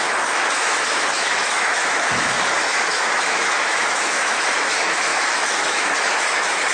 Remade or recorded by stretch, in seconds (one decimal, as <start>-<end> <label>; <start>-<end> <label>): 0.0-6.7 remade